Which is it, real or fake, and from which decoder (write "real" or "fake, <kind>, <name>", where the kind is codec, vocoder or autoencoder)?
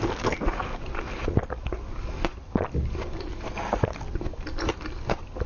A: real